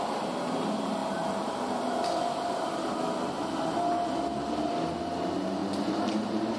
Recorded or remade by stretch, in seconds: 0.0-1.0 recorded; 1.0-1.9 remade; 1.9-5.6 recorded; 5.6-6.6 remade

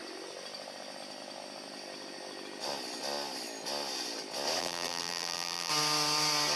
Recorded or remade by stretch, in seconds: 0.0-4.6 recorded; 4.6-5.7 remade; 5.7-6.6 recorded

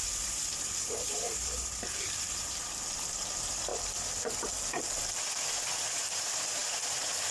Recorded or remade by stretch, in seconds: 0.0-3.7 remade; 3.7-5.8 recorded; 5.8-7.3 remade

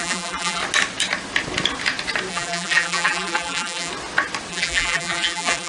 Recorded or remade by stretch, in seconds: 0.0-0.6 remade; 0.6-2.3 recorded; 2.3-3.9 remade; 3.9-4.5 recorded; 4.5-5.7 remade